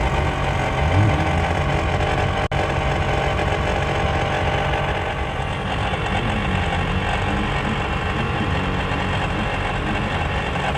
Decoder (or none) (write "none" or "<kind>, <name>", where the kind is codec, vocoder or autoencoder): none